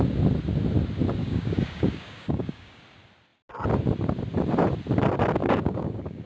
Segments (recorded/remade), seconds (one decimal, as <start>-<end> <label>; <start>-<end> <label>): 0.0-1.2 recorded; 1.2-2.8 remade; 2.8-5.4 recorded; 5.4-6.3 remade